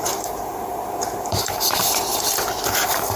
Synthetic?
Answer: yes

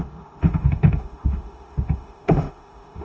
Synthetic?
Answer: yes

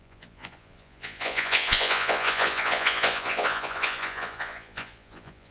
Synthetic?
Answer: yes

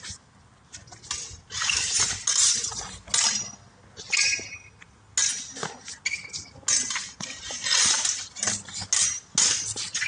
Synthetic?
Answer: no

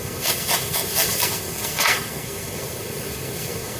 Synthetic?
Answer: yes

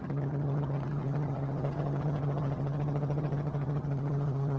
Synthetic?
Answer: yes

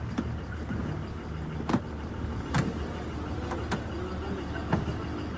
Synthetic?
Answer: no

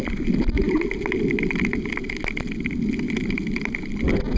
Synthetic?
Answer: no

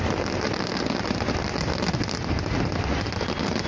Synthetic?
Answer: no